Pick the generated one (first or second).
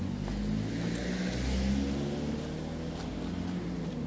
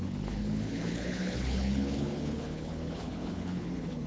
second